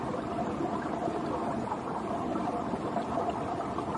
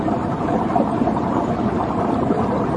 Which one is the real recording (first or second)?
first